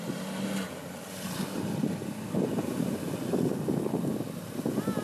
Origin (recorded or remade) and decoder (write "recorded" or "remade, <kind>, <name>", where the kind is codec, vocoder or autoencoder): recorded